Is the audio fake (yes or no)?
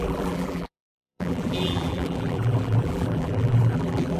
yes